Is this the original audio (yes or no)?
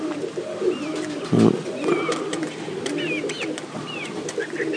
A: yes